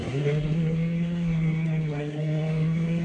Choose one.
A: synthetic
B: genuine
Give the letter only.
A